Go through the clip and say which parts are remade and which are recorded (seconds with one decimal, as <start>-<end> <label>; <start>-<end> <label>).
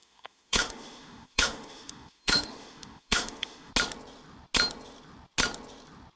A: 0.0-3.7 remade; 3.7-6.2 recorded